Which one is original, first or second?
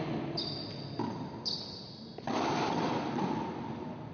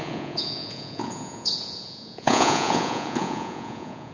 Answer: first